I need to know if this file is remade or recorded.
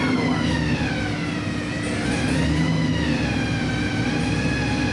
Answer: recorded